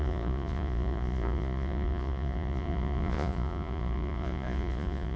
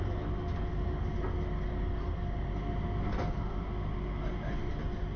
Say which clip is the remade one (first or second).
first